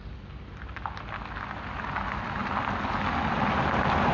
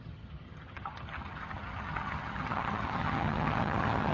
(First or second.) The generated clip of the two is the second